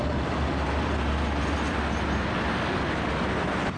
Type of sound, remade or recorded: recorded